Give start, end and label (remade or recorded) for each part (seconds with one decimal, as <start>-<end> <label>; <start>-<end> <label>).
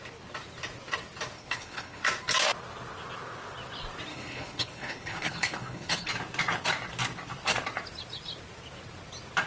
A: 0.0-1.4 recorded; 1.4-2.0 remade; 2.0-4.1 recorded; 4.1-6.1 remade; 6.1-9.5 recorded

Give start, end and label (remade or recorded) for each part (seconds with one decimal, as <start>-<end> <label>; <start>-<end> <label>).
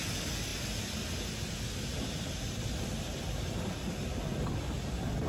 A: 0.0-5.3 recorded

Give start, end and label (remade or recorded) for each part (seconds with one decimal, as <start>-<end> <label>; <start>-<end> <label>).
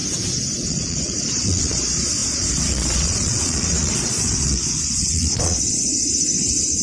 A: 0.0-0.7 recorded; 0.7-6.8 remade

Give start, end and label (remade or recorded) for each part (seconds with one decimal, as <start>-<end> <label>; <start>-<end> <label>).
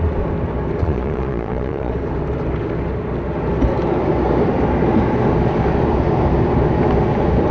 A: 0.0-0.8 recorded; 0.8-1.9 remade; 1.9-7.5 recorded